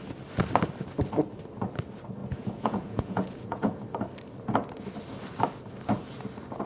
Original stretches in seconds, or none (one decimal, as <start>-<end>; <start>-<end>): 0.0-2.2; 3.8-6.7